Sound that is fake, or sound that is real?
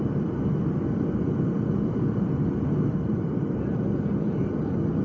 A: real